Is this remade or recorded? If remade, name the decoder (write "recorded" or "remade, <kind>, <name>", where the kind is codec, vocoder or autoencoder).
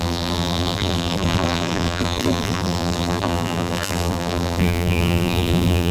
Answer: remade, vocoder, BigVGAN v2